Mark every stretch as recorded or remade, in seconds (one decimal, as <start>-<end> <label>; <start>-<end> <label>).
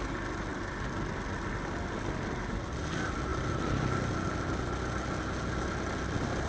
0.0-3.3 recorded; 3.3-4.1 remade; 4.1-6.5 recorded